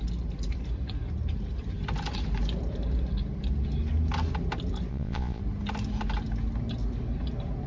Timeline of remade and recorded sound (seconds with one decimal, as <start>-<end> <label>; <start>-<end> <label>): 0.0-4.9 recorded; 4.9-5.4 remade; 5.4-7.7 recorded